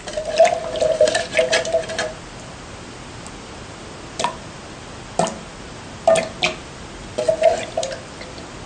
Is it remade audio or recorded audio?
recorded